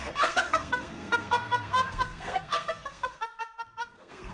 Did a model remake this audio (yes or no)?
yes